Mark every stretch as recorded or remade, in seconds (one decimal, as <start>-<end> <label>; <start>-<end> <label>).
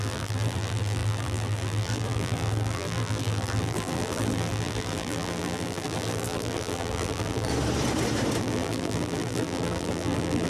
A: 0.0-7.5 remade; 7.5-8.4 recorded; 8.4-10.5 remade